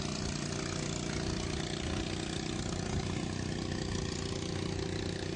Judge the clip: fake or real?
real